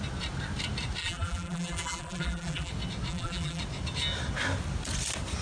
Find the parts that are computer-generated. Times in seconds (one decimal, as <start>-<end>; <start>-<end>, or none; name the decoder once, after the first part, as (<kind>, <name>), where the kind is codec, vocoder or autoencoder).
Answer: 1.0-2.7 (vocoder, BigVGAN v2); 3.1-3.6